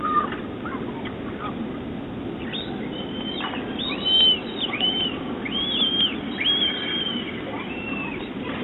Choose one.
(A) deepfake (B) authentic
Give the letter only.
B